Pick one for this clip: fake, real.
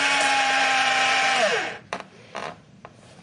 fake